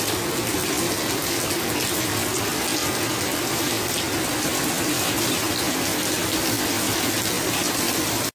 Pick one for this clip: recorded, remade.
recorded